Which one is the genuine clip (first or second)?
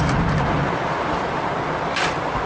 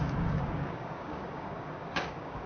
first